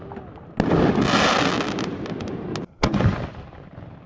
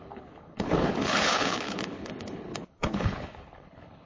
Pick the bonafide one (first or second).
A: first